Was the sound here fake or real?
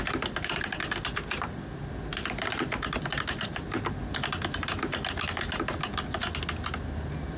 real